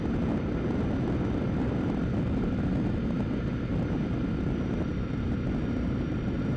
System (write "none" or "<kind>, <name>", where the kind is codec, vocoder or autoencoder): none